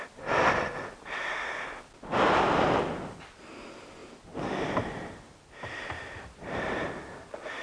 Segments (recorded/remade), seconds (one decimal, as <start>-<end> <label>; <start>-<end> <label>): 0.0-7.6 recorded